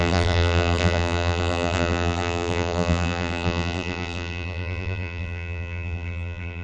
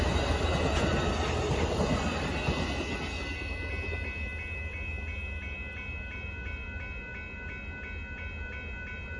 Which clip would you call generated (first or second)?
first